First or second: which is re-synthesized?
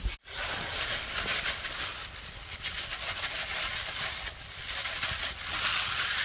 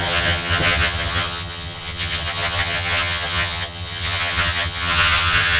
second